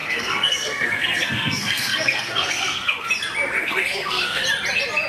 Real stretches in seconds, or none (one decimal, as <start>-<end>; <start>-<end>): 3.1-3.6; 4.4-5.1